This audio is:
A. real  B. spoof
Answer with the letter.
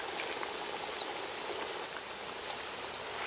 A